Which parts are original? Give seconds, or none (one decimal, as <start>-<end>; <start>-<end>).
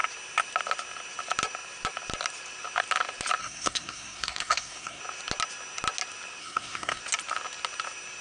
0.0-3.4; 5.0-6.4; 7.0-8.2